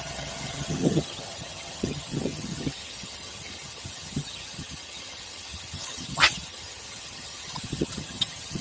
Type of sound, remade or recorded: remade